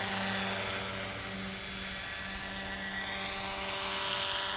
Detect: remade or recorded recorded